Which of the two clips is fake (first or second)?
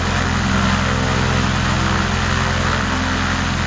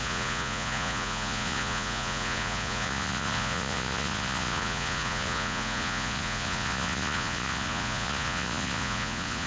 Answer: second